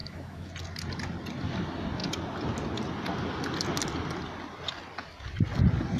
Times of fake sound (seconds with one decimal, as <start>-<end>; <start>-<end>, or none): 0.0-0.5